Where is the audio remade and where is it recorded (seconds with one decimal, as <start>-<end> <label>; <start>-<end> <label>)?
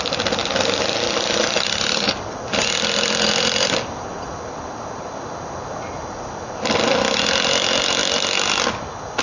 0.0-9.2 recorded